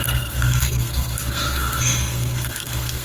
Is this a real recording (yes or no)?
no